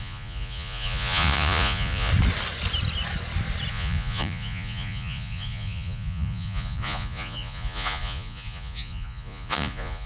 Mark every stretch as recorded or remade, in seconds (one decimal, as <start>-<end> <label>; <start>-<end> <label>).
0.0-2.1 remade; 2.1-3.7 recorded; 3.7-10.1 remade